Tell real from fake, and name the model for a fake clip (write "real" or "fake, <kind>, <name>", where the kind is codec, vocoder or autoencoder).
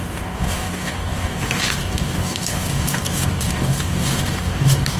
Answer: fake, codec, DAC